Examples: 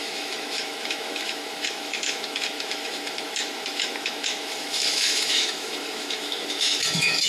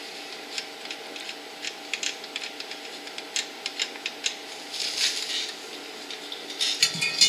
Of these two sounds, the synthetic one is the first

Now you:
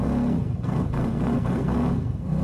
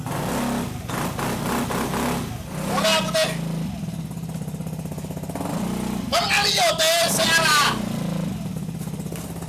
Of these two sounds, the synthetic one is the first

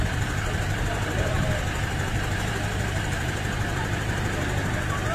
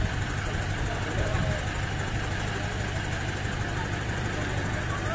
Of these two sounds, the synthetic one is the first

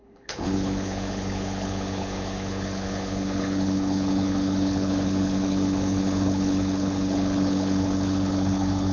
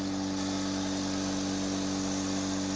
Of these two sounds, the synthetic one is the first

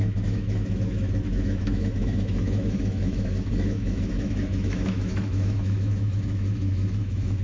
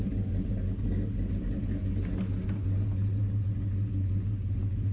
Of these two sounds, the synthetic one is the first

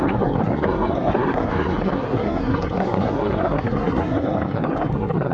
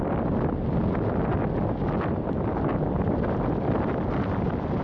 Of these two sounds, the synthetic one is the first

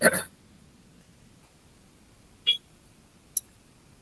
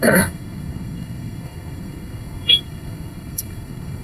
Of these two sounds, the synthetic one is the second